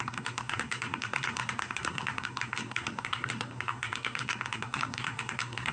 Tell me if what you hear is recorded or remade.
remade